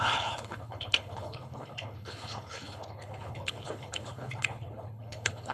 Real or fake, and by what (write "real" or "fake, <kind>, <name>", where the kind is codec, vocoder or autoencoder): fake, codec, HILCodec